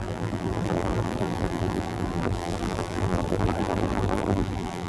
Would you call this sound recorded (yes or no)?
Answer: no